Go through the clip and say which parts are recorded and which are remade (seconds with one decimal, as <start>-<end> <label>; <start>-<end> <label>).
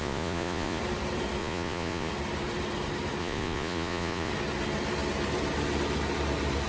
0.0-0.8 remade; 0.8-1.4 recorded; 1.4-2.1 remade; 2.1-3.2 recorded; 3.2-4.3 remade; 4.3-6.7 recorded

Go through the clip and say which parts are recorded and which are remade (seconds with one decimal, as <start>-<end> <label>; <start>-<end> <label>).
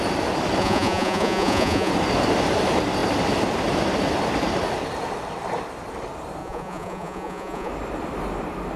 0.0-0.6 recorded; 0.6-1.9 remade; 1.9-6.4 recorded; 6.4-7.7 remade; 7.7-8.8 recorded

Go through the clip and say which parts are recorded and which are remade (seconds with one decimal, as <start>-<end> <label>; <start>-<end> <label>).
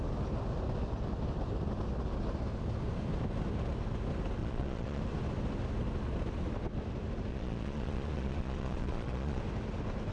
0.0-4.4 recorded; 4.4-5.0 remade; 5.0-7.3 recorded; 7.3-9.4 remade; 9.4-10.1 recorded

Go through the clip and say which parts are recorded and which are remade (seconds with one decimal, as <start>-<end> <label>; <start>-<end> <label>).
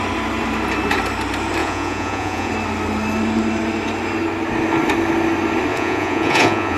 0.0-1.6 recorded; 1.6-2.5 remade; 2.5-5.7 recorded; 5.7-6.8 remade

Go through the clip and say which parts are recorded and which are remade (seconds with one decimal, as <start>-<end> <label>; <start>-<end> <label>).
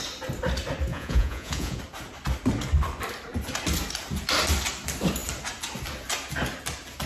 0.0-0.9 recorded; 0.9-1.8 remade; 1.8-7.1 recorded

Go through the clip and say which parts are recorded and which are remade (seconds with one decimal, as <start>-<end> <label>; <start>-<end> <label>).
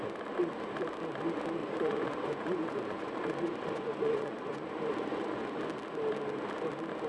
0.0-1.6 recorded; 1.6-5.6 remade; 5.6-7.1 recorded